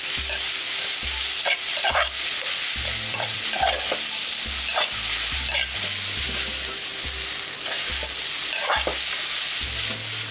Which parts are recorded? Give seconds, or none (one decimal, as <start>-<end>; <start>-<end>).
0.0-1.7; 3.5-10.3